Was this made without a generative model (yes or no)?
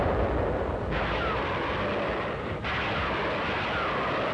yes